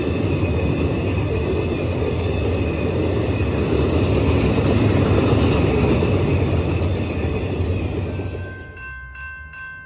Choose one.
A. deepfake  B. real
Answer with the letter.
B